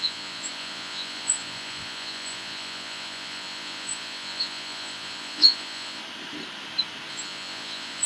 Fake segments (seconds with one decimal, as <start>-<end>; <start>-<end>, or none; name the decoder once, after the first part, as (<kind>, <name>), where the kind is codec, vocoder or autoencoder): 0.0-6.0 (vocoder, Vocos); 7.1-8.1